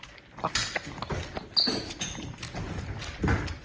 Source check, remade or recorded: recorded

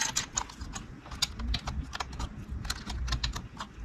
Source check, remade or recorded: recorded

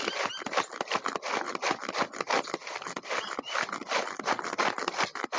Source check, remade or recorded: recorded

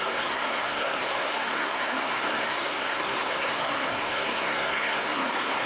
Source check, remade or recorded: remade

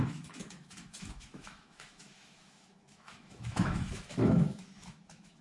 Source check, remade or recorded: remade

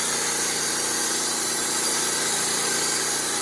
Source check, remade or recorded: recorded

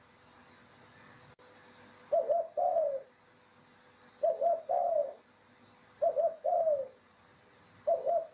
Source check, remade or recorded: recorded